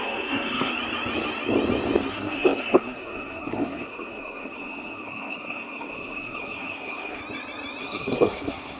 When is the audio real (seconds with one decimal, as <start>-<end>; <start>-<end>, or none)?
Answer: 0.7-2.1; 7.2-7.8